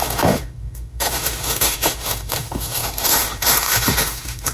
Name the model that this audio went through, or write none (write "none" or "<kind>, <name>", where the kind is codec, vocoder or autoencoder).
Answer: autoencoder, DAC-VAE